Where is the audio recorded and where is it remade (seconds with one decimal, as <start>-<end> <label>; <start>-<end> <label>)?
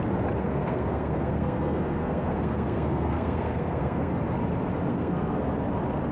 0.0-0.4 recorded; 0.4-4.1 remade; 4.1-4.9 recorded; 4.9-5.4 remade; 5.4-6.1 recorded